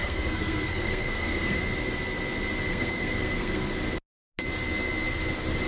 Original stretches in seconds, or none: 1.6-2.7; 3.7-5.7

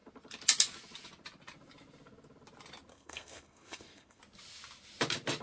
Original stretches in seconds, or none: 0.0-2.9; 4.2-5.4

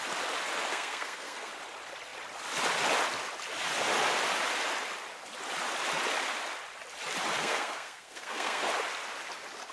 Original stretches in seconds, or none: 0.0-0.7; 1.5-7.4; 8.6-9.7

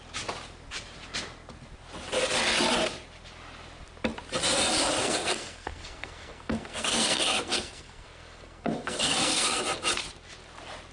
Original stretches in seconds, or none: 0.0-5.0; 9.6-10.9

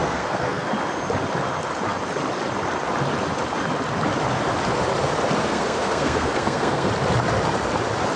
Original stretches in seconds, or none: 0.7-5.4; 6.9-8.2